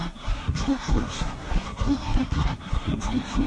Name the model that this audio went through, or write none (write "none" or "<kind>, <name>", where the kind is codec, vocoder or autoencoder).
codec, SNAC